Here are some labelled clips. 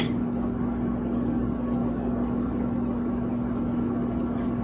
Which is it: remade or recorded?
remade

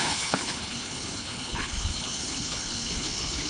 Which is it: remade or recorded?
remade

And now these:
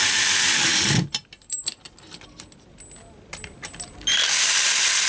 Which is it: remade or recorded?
remade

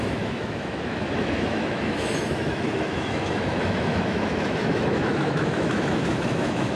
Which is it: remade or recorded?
remade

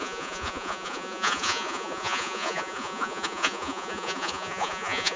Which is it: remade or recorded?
remade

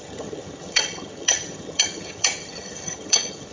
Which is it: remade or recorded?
remade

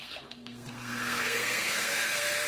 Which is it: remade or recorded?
remade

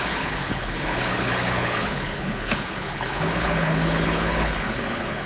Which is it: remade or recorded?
remade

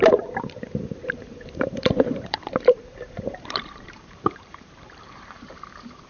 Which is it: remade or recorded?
remade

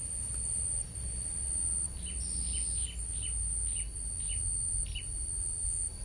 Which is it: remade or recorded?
recorded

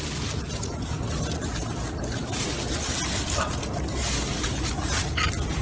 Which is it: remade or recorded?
recorded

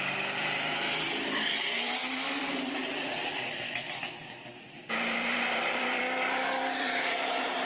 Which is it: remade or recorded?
remade